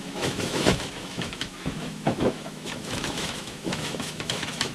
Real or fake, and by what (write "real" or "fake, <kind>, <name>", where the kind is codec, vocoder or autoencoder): fake, autoencoder, DAC-VAE